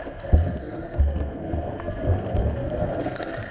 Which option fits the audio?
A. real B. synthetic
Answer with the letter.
B